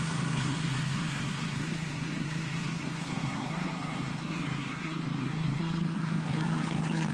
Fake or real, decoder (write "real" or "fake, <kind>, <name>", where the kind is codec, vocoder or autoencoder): fake, codec, SNAC